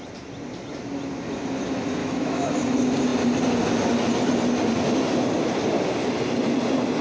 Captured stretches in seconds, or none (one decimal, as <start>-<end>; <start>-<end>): 0.0-2.0; 2.5-7.0